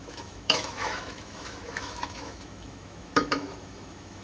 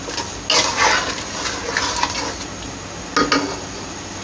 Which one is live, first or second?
second